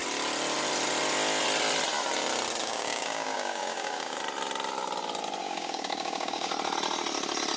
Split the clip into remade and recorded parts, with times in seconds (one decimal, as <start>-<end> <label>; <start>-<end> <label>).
0.0-2.6 recorded; 2.6-4.2 remade; 4.2-5.4 recorded; 5.4-6.5 remade; 6.5-7.6 recorded